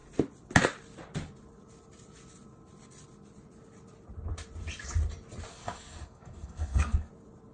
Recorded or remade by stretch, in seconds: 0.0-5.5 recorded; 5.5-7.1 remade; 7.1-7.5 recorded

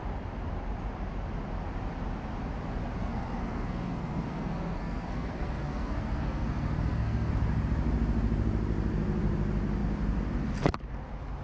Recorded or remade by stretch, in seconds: 0.0-3.0 recorded; 3.0-7.3 remade; 7.3-11.4 recorded

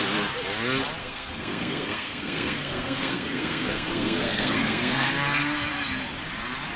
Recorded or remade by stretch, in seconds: 0.0-1.0 recorded; 1.0-5.1 remade; 5.1-6.8 recorded

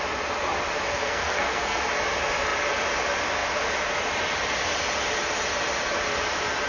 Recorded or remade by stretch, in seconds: 0.0-0.9 recorded; 0.9-1.8 remade; 1.8-6.7 recorded